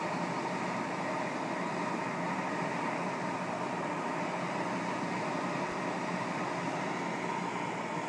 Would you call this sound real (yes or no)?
yes